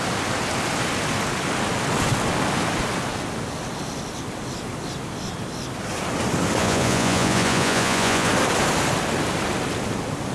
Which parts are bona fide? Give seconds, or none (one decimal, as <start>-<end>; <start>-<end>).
0.0-6.6; 8.3-10.3